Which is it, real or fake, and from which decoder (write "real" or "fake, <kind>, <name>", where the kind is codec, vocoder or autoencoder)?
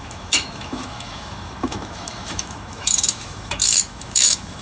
fake, autoencoder, DAC-VAE